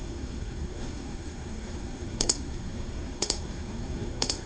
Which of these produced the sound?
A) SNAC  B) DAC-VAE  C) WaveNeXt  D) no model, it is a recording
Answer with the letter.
A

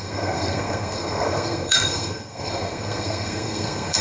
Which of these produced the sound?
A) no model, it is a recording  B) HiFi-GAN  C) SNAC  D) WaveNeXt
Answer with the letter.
C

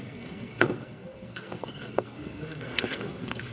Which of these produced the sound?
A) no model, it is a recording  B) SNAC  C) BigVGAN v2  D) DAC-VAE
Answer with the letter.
B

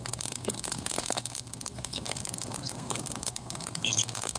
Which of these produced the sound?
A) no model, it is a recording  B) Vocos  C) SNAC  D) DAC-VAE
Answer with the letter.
C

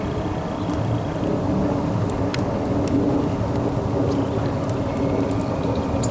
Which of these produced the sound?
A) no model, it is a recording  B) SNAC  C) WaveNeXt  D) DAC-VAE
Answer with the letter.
A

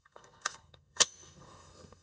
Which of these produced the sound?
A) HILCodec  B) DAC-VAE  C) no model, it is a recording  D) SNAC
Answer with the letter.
D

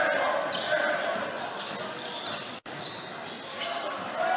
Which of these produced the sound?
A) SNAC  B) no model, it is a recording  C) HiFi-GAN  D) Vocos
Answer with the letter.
B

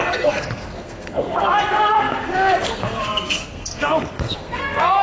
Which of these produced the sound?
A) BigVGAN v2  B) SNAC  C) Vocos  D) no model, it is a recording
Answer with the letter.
B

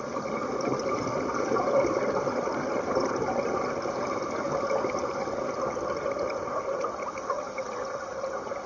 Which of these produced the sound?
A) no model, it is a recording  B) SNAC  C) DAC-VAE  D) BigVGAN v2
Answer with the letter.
A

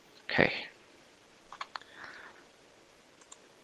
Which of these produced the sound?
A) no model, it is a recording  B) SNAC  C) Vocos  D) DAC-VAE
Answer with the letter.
A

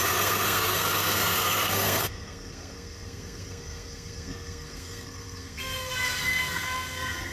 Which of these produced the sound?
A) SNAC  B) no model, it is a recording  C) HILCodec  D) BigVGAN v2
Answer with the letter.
A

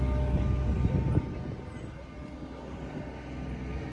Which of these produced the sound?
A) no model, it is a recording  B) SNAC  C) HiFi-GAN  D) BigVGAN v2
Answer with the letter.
A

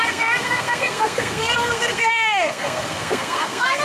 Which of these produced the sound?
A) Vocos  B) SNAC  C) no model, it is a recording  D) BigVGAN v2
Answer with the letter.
B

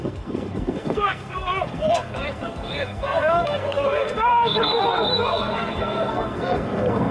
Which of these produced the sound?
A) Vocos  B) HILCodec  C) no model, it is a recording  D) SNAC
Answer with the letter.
D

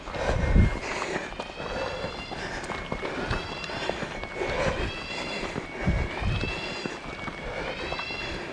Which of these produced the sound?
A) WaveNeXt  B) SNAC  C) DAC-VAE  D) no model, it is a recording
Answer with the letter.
D